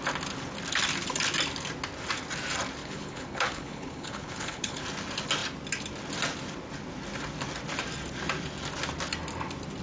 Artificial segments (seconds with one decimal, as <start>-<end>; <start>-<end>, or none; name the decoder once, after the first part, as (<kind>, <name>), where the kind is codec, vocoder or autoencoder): 2.8-4.8 (codec, HILCodec)